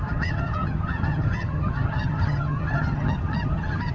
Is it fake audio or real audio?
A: fake